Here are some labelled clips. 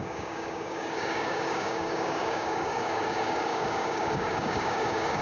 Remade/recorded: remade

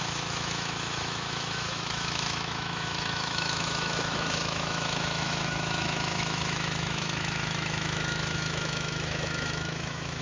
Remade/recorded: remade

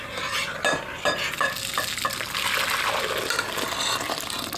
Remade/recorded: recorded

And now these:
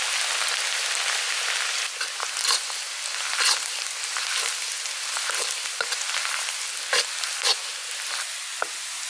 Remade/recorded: recorded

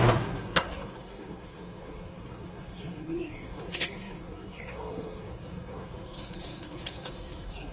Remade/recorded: remade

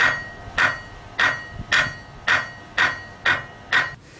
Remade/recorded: recorded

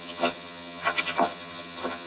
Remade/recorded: remade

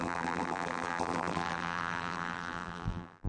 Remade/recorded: remade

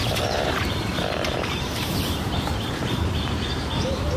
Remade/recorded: remade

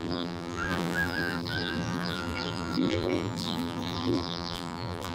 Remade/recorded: remade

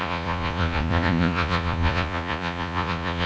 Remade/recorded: remade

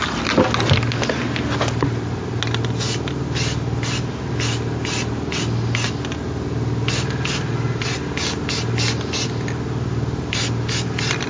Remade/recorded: recorded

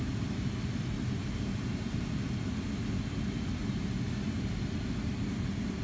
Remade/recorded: recorded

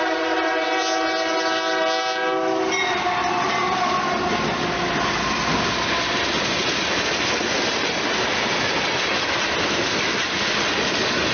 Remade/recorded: recorded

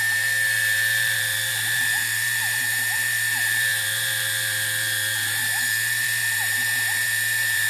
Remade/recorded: remade